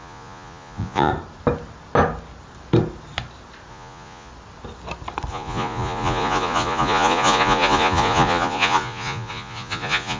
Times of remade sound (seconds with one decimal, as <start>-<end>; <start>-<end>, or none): 0.0-1.1; 3.7-4.3; 5.3-10.2